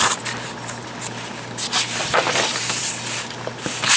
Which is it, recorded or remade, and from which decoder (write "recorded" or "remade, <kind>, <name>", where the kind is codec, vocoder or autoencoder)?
recorded